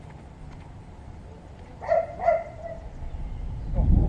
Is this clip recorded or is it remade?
remade